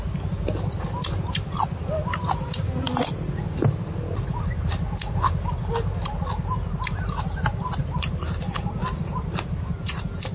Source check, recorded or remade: recorded